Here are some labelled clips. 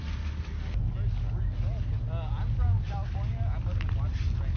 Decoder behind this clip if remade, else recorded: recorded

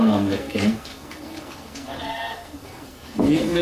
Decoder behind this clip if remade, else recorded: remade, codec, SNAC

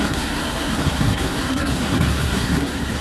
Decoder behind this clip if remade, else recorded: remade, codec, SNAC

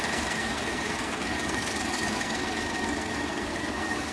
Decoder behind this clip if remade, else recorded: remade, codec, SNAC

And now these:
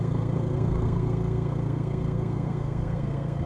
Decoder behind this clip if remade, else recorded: remade, codec, SNAC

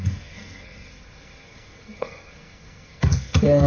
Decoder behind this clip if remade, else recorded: remade, codec, SNAC